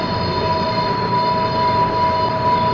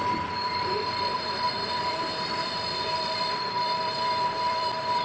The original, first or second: first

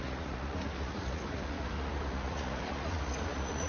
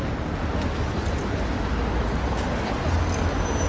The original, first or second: second